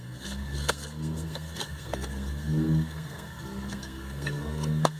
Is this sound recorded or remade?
remade